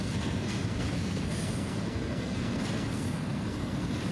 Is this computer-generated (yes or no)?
yes